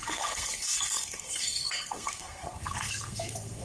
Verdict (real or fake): fake